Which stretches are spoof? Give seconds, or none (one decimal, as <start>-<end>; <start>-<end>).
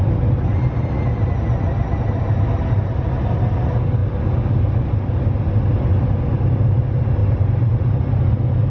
7.2-7.9